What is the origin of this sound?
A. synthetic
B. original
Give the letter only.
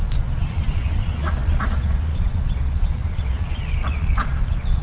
A